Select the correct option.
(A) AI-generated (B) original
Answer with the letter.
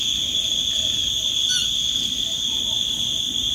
B